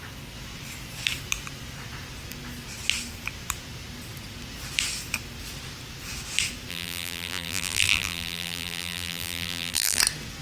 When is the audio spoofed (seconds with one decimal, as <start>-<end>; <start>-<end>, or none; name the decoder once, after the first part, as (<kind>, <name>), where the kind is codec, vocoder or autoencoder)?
6.7-10.0 (vocoder, BigVGAN v2)